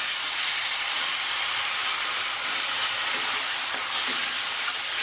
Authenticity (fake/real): fake